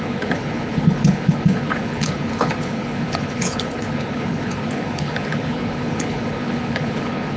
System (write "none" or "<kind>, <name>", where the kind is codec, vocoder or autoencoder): codec, HILCodec